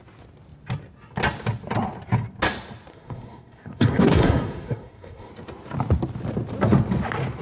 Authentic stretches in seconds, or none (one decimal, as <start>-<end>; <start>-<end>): 0.0-2.9; 5.3-7.4